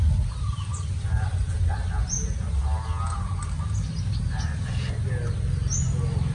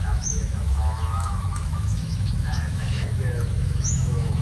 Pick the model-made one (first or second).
second